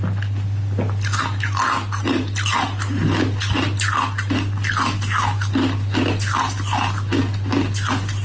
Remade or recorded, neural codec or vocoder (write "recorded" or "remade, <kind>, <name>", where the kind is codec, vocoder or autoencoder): recorded